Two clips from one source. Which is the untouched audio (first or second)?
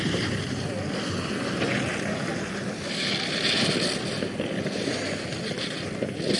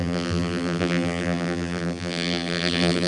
first